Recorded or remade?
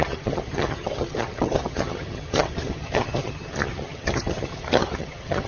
remade